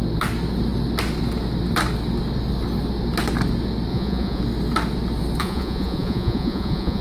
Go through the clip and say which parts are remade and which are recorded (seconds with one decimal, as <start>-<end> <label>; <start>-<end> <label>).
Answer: 0.0-3.9 recorded; 3.9-4.4 remade; 4.4-5.4 recorded; 5.4-7.0 remade